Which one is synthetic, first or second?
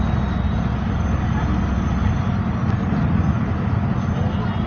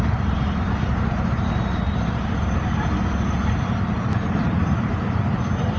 second